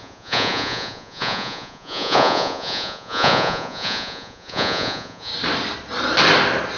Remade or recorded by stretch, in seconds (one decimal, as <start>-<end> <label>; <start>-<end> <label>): 0.0-5.3 remade; 5.3-6.8 recorded